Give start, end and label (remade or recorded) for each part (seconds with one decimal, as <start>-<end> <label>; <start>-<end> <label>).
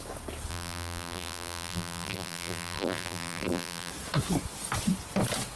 0.0-0.5 recorded; 0.5-3.9 remade; 3.9-5.6 recorded